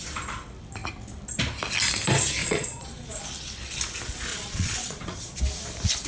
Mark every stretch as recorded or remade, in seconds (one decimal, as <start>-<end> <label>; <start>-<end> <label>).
0.0-2.4 recorded; 2.4-3.2 remade; 3.2-4.3 recorded; 4.3-5.4 remade; 5.4-6.1 recorded